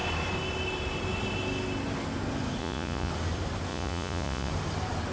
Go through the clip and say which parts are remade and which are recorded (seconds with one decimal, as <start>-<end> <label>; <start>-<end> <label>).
0.0-2.6 recorded; 2.6-3.1 remade; 3.1-3.7 recorded; 3.7-4.5 remade; 4.5-5.1 recorded